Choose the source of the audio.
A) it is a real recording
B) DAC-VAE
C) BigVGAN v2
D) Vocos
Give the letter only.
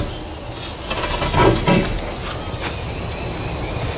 A